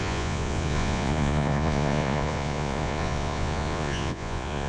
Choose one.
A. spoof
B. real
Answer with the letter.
A